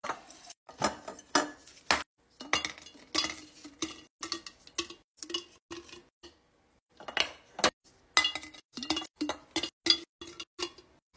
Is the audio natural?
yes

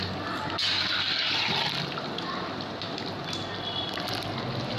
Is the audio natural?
yes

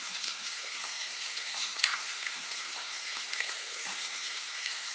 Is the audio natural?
no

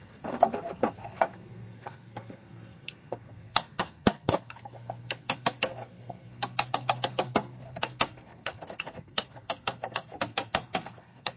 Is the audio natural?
no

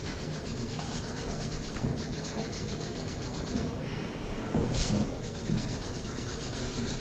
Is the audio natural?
no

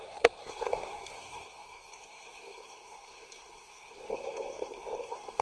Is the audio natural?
no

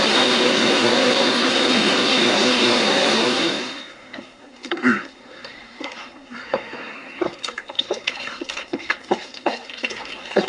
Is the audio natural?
no